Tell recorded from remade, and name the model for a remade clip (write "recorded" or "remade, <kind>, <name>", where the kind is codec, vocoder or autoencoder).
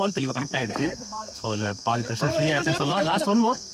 remade, codec, SNAC